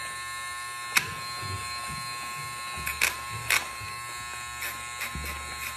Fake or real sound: real